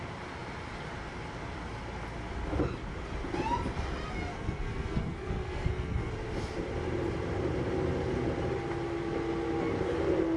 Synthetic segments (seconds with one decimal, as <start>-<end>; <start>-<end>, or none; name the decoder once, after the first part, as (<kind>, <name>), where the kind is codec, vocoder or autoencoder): 4.3-6.1 (codec, SNAC)